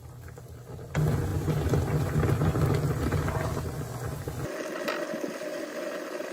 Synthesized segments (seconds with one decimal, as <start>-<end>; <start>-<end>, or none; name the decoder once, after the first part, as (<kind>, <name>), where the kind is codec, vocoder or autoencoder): 1.3-2.6 (vocoder, BigVGAN v2)